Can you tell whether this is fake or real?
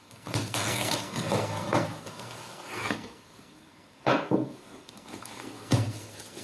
fake